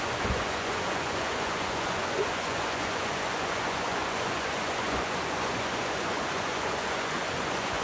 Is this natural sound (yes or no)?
no